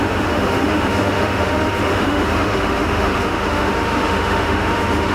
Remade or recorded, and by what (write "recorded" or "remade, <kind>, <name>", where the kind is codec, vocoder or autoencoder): remade, autoencoder, DAC-VAE